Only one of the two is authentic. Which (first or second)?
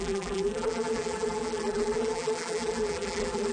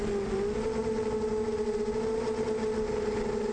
second